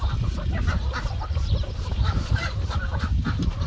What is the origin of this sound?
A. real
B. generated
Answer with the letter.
B